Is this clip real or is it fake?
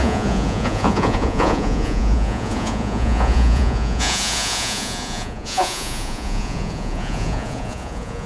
fake